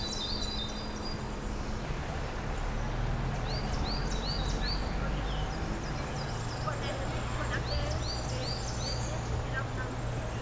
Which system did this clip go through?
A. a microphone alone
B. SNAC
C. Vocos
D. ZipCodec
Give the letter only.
A